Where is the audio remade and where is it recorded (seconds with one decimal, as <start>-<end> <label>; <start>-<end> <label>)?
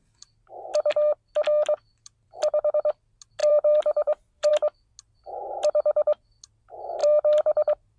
0.0-0.7 recorded; 0.7-1.3 remade; 1.3-1.9 recorded; 1.9-2.7 remade; 2.7-3.4 recorded; 3.4-4.5 remade; 4.5-7.0 recorded; 7.0-8.0 remade